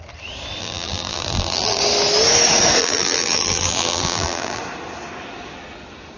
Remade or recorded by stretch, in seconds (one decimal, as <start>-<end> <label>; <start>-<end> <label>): 0.0-0.6 recorded; 0.6-1.8 remade; 1.8-2.8 recorded; 2.8-4.6 remade; 4.6-6.2 recorded